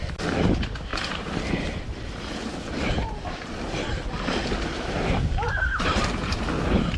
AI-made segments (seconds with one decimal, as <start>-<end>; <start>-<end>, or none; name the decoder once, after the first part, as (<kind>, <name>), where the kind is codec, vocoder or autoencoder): 0.9-4.0 (vocoder, BigVGAN v2); 4.4-6.4